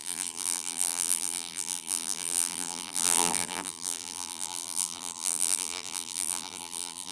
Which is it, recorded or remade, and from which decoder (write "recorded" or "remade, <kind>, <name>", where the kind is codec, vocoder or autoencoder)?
remade, vocoder, BigVGAN v2